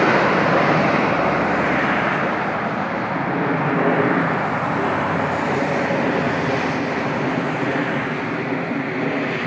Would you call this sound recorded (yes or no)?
yes